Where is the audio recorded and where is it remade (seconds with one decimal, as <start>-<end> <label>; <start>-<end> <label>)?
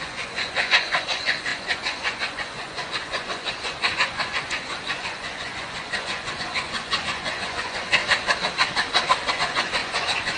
0.0-8.0 remade; 8.0-9.3 recorded; 9.3-10.4 remade